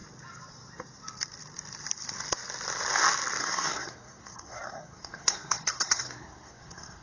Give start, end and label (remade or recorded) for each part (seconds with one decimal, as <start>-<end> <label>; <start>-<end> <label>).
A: 0.0-3.4 recorded; 3.4-7.0 remade